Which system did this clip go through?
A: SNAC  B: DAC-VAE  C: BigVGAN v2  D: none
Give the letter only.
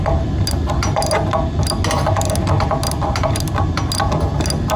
D